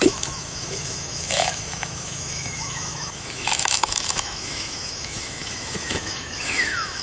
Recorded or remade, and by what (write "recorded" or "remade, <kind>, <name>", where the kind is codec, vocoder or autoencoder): remade, autoencoder, DAC-VAE